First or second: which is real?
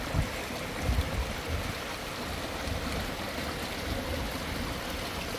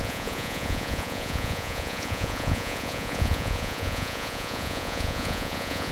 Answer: first